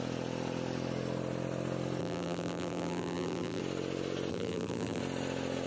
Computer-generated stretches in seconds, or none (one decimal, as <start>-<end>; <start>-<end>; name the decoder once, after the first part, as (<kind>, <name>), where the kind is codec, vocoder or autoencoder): 2.0-3.6 (vocoder, BigVGAN v2); 4.3-5.0